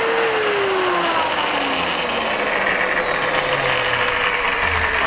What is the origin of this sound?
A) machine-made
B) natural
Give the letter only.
B